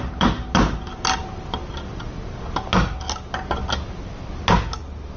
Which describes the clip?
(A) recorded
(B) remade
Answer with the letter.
A